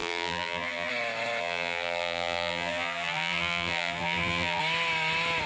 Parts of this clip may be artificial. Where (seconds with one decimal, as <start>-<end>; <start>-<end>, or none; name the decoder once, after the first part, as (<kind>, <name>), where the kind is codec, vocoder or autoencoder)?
0.0-0.9 (vocoder, BigVGAN v2); 1.4-4.6